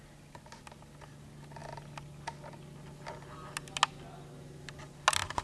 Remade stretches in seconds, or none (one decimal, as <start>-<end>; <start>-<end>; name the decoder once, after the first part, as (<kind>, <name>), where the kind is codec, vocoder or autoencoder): none